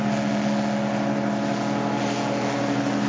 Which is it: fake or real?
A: real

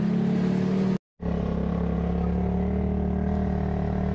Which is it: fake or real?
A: real